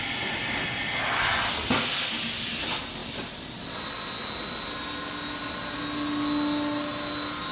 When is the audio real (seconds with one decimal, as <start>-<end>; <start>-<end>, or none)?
0.0-7.5